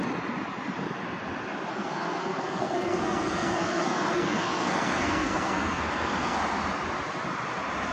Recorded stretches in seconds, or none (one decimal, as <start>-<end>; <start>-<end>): 0.0-1.7; 6.4-7.9